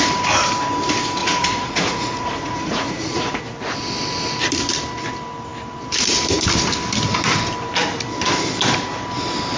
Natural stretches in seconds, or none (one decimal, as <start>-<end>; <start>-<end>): 0.0-1.2; 3.4-9.6